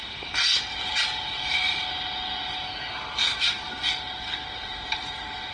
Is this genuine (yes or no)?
no